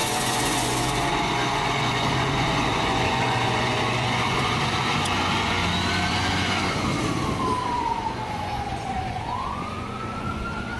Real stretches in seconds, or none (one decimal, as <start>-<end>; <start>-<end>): 5.6-6.1; 6.9-7.7